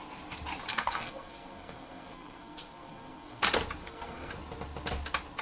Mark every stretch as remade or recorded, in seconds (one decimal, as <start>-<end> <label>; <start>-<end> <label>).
0.0-0.7 recorded; 0.7-3.4 remade; 3.4-3.8 recorded; 3.8-4.3 remade; 4.3-5.4 recorded